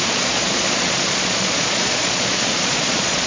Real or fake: fake